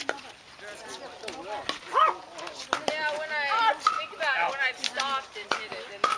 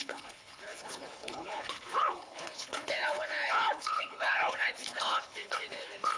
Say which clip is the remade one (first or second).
second